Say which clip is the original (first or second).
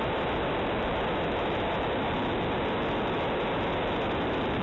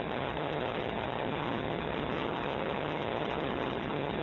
first